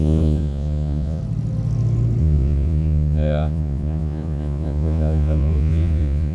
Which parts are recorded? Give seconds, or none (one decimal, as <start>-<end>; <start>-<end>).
1.2-2.2